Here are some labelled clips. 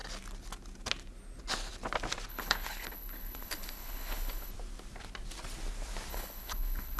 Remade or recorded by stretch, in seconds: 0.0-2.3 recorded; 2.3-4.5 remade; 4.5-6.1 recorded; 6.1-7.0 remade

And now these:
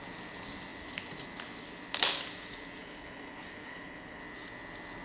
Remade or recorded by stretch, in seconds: 0.0-2.8 recorded; 2.8-4.2 remade; 4.2-5.0 recorded

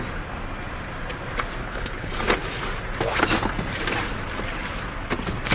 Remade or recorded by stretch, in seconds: 0.0-1.6 recorded; 1.6-2.1 remade; 2.1-5.5 recorded

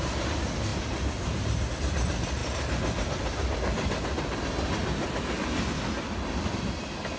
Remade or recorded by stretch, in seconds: 0.0-7.2 recorded

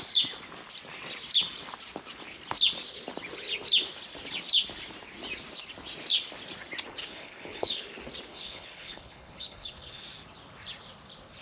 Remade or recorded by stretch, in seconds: 0.0-7.0 recorded; 7.0-7.8 remade; 7.8-8.3 recorded; 8.3-10.0 remade; 10.0-11.4 recorded